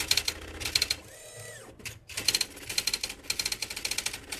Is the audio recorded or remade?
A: recorded